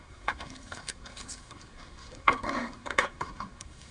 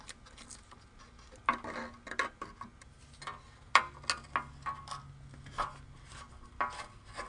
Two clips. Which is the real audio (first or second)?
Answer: second